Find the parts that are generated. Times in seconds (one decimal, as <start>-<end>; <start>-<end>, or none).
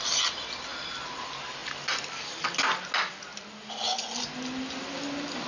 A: none